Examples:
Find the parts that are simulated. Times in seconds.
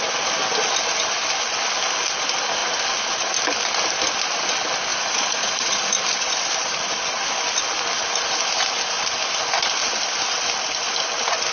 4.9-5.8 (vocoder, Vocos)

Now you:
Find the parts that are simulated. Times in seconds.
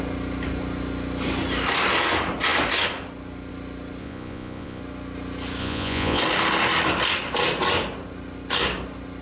4.0-4.8 (vocoder, Vocos); 5.6-6.2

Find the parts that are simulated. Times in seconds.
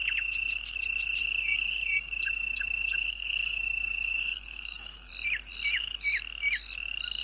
1.2-5.1 (codec, DAC)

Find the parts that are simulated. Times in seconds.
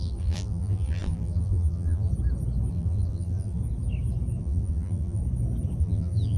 0.0-2.1 (vocoder, BigVGAN v2); 2.7-3.6; 4.4-5.2; 5.8-6.4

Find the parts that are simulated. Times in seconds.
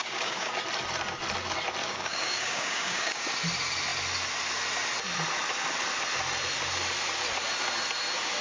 0.0-0.5 (codec, DAC); 1.8-3.2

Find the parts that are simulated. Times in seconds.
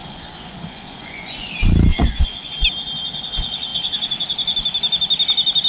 0.0-1.5 (vocoder, Vocos); 1.9-2.5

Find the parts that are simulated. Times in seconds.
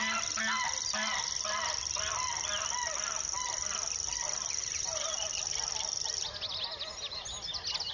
4.6-5.4 (vocoder, BigVGAN v2)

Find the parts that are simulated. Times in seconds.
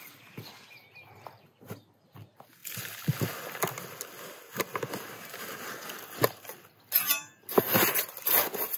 none